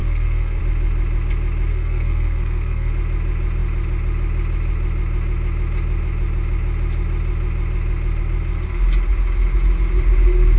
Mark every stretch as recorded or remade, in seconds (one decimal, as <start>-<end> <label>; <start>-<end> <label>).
0.0-0.6 remade; 0.6-1.7 recorded; 1.7-2.9 remade; 2.9-10.6 recorded